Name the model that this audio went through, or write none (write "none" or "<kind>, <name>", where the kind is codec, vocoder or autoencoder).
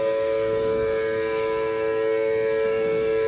codec, DAC